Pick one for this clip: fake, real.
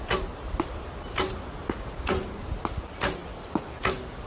real